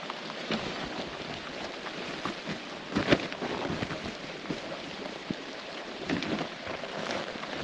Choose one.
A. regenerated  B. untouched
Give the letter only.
B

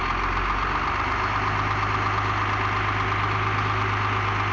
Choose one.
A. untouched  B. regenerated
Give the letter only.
A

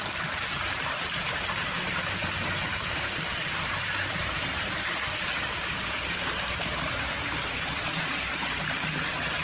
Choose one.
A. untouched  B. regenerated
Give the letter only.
B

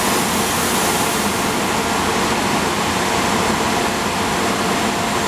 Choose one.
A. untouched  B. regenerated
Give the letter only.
A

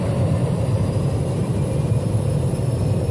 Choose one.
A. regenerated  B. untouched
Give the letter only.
A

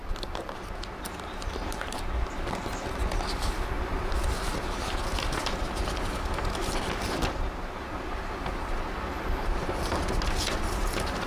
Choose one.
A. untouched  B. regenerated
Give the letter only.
A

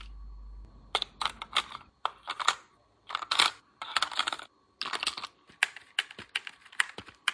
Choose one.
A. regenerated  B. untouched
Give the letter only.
B